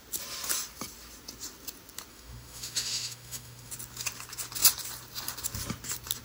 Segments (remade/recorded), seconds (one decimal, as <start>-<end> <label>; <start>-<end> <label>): 0.0-2.1 recorded; 2.1-3.7 remade; 3.7-6.2 recorded